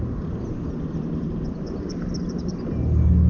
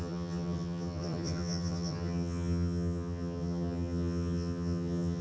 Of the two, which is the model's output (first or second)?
second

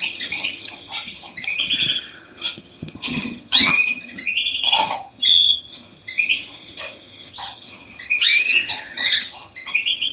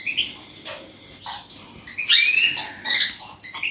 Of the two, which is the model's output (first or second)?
first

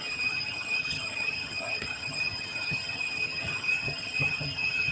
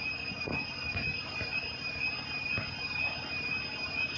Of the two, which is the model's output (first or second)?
first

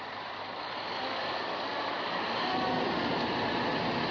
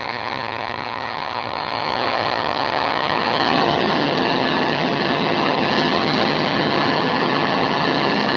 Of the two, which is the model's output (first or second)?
second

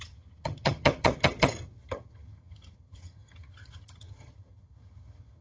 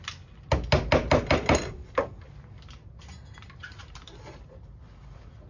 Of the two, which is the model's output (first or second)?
first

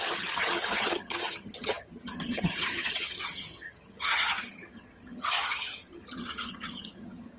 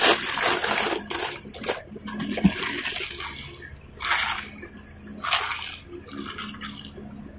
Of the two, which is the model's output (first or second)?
first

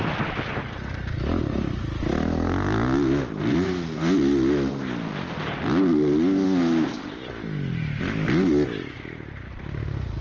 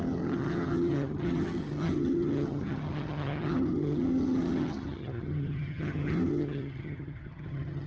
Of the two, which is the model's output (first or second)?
second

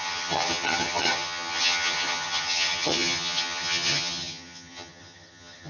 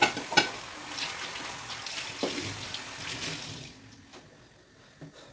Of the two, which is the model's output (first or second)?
first